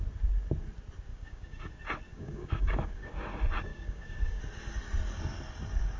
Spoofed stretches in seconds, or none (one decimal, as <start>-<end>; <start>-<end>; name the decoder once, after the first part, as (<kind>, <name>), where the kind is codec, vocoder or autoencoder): 1.1-1.7 (codec, DAC); 2.1-3.1; 3.7-4.4